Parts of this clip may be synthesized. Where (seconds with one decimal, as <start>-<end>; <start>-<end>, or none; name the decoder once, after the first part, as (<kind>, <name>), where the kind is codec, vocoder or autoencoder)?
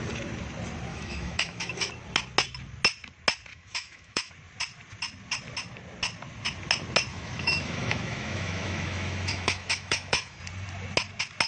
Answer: 0.9-1.9 (autoencoder, DAC-VAE); 3.5-4.3; 7.1-10.4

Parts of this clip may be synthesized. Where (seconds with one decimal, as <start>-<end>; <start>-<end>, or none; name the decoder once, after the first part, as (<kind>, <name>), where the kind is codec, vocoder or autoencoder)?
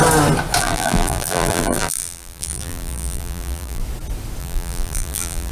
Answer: 0.6-3.8 (vocoder, BigVGAN v2); 4.4-5.5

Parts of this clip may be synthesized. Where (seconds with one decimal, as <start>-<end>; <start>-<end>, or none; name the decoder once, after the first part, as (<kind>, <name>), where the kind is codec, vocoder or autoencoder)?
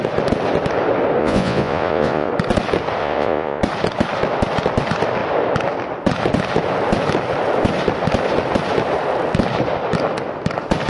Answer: 1.2-2.3 (vocoder, Vocos); 3.0-3.6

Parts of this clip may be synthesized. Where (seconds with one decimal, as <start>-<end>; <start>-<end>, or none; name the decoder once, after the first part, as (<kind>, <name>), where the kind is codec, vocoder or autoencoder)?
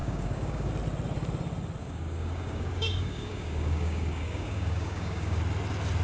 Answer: 0.0-0.7 (codec, DAC); 1.8-5.4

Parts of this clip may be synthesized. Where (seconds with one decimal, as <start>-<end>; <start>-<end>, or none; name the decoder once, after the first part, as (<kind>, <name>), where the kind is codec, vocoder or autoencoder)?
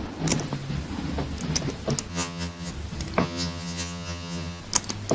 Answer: 2.1-2.7 (vocoder, HiFi-GAN); 3.2-4.6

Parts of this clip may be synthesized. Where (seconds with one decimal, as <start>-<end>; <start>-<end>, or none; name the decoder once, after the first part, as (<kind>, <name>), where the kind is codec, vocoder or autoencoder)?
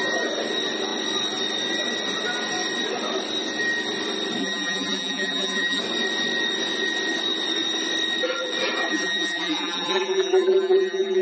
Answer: 4.4-5.8 (vocoder, BigVGAN v2); 8.9-11.2